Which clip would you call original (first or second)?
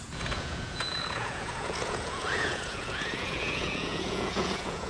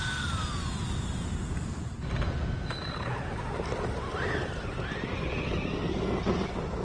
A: second